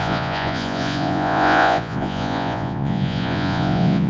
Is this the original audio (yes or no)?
no